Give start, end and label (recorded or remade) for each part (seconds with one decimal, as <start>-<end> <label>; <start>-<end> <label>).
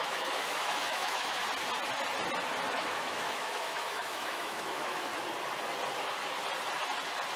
0.0-1.4 remade; 1.4-2.7 recorded; 2.7-5.1 remade; 5.1-7.4 recorded